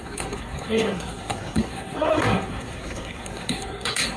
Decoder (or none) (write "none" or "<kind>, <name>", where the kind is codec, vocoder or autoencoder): codec, SNAC